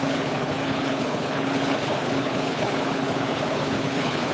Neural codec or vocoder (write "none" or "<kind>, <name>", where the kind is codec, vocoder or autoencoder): codec, HILCodec